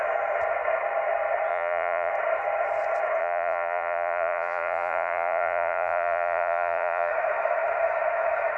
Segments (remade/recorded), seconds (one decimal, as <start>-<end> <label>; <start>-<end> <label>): 0.0-1.5 recorded; 1.5-2.1 remade; 2.1-3.2 recorded; 3.2-7.1 remade; 7.1-8.6 recorded